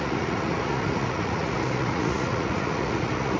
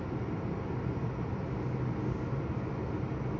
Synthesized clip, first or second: first